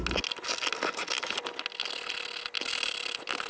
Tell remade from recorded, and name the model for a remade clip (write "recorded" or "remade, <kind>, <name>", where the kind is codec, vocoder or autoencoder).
recorded